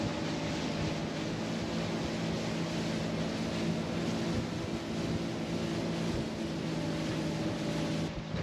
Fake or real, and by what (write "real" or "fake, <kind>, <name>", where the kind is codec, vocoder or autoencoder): real